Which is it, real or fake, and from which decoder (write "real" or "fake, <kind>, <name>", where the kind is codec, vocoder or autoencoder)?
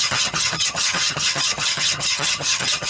fake, vocoder, HiFi-GAN